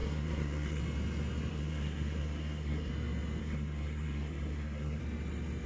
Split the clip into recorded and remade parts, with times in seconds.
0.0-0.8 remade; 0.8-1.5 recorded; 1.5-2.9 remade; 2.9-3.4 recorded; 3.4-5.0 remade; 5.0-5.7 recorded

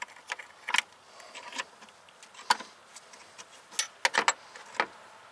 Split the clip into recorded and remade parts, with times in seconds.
0.0-5.3 recorded